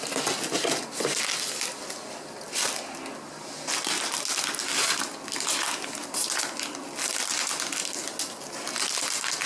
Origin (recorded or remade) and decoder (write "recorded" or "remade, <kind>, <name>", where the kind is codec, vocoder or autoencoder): recorded